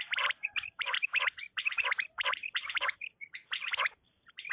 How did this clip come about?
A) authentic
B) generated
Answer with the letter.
B